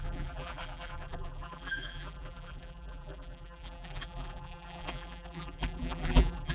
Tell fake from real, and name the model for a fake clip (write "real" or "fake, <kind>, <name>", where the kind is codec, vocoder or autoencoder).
fake, vocoder, BigVGAN v2